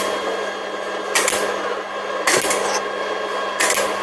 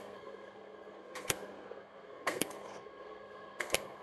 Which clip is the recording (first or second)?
first